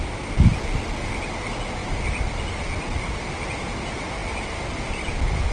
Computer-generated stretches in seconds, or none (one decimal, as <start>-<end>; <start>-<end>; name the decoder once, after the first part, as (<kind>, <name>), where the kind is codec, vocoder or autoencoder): none